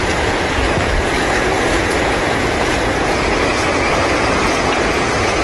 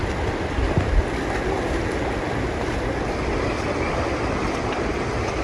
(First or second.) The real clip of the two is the second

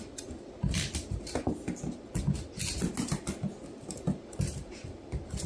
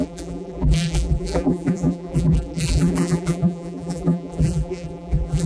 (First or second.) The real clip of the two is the first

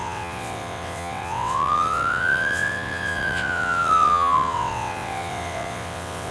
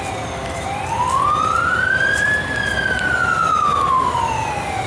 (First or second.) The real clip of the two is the second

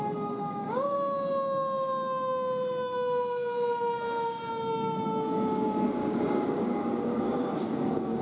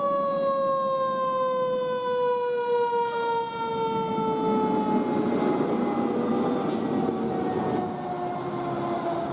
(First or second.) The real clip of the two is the second